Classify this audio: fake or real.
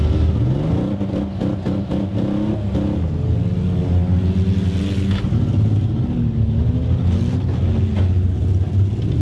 real